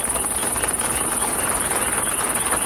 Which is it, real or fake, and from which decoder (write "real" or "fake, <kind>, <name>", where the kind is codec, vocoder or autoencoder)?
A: real